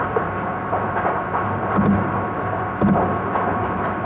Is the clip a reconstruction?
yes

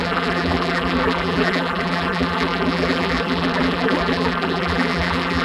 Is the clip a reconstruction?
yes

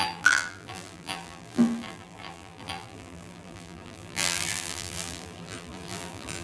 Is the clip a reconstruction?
yes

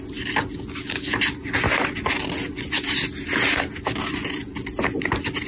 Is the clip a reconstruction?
no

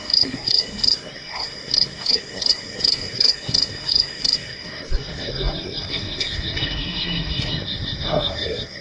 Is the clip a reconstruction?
yes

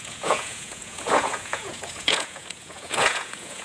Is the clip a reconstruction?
yes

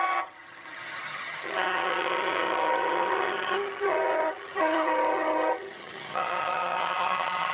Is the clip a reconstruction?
yes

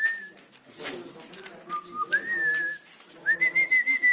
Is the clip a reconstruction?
no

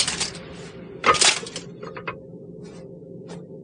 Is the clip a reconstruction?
no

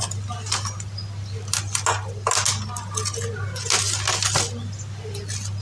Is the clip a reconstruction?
no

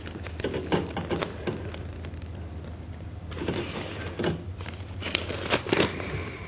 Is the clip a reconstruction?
yes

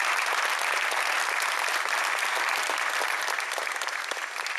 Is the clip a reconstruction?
no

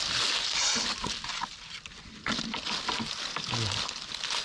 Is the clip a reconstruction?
no